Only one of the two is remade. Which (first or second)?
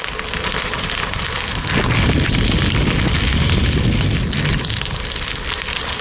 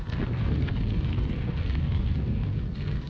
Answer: second